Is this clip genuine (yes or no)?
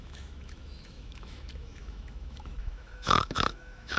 no